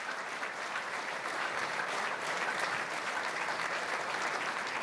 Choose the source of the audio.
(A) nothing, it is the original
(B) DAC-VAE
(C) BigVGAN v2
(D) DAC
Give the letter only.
C